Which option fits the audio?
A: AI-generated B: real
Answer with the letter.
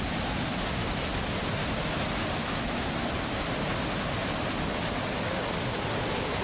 B